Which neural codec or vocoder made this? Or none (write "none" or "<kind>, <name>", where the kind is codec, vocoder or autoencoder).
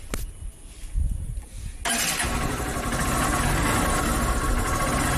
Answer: none